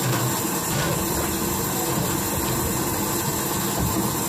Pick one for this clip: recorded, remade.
recorded